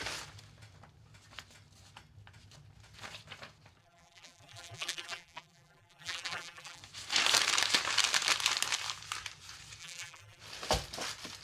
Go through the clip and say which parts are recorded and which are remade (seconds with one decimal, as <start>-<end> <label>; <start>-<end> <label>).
0.0-3.8 recorded; 3.8-6.8 remade; 6.8-9.8 recorded; 9.8-10.4 remade; 10.4-11.4 recorded